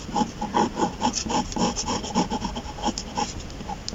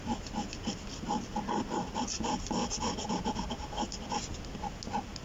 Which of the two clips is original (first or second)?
second